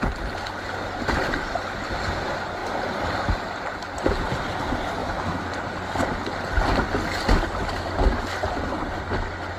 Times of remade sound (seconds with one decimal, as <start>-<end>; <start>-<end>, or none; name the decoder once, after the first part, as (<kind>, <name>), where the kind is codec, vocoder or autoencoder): 5.0-5.5 (autoencoder, DAC-VAE)